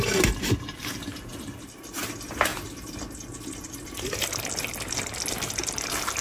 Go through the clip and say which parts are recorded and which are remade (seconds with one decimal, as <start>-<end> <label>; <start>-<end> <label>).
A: 0.0-6.2 recorded